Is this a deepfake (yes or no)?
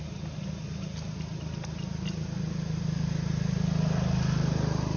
no